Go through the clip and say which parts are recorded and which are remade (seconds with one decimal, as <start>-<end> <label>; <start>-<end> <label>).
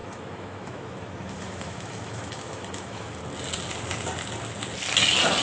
0.0-3.2 remade; 3.2-5.4 recorded